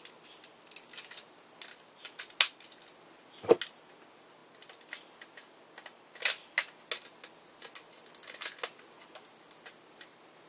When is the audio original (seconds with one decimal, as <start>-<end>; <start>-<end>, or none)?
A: 0.0-10.5